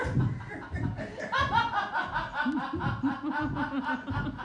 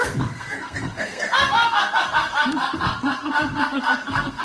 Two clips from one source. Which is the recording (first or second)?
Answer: first